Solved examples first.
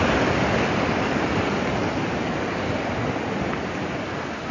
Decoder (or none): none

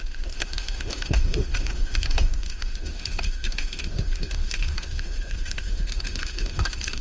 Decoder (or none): autoencoder, DAC-VAE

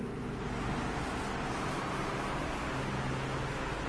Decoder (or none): none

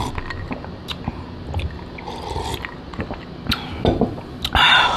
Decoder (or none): none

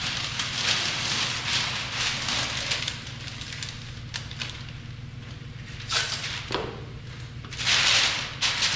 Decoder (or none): none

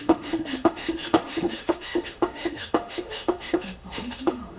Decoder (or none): autoencoder, DAC-VAE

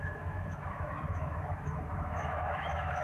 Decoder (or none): autoencoder, DAC-VAE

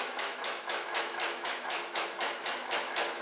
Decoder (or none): autoencoder, DAC-VAE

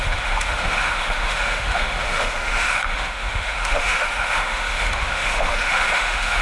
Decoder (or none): autoencoder, DAC-VAE